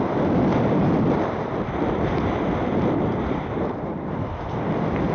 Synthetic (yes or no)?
yes